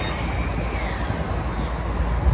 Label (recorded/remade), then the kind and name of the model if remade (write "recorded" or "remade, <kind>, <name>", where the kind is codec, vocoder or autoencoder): recorded